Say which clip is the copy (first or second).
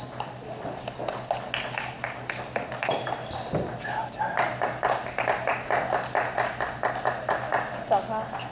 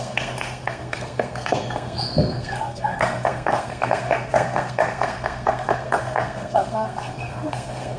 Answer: second